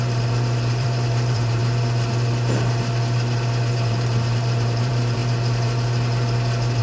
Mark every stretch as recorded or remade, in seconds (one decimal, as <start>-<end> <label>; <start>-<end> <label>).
0.0-1.6 remade; 1.6-3.7 recorded; 3.7-5.2 remade; 5.2-6.8 recorded